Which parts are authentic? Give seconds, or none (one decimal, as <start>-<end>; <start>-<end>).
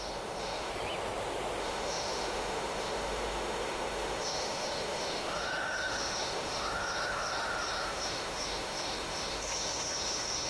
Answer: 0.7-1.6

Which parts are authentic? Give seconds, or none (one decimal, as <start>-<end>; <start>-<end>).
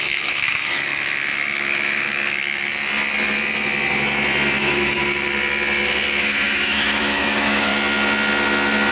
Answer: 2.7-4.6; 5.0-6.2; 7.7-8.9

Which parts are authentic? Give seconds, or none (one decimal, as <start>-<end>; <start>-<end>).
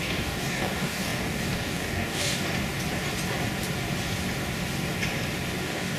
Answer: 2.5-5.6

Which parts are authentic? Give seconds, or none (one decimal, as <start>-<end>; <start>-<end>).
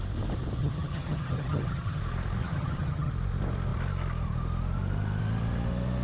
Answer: 0.0-0.6; 2.0-2.4; 3.1-6.0